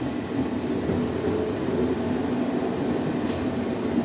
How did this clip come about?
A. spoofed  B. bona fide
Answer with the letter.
B